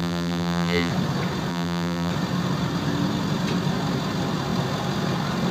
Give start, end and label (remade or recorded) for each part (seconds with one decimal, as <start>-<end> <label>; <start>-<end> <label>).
0.0-0.9 remade; 0.9-1.5 recorded; 1.5-2.1 remade; 2.1-5.5 recorded